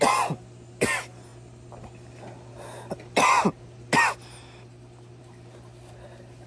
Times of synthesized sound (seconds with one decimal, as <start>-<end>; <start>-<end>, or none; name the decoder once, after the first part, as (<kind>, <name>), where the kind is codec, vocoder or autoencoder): none